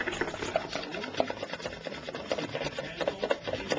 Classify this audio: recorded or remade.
recorded